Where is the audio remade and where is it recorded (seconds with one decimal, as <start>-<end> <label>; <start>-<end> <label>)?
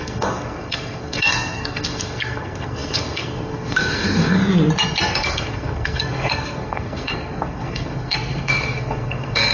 0.0-4.4 remade; 4.4-5.0 recorded; 5.0-9.5 remade